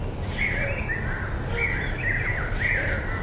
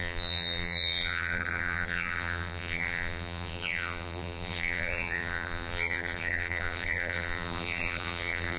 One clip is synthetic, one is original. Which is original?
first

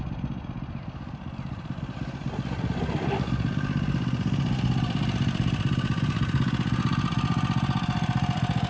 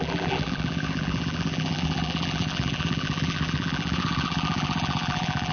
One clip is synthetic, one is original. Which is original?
first